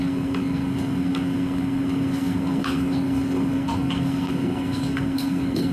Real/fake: fake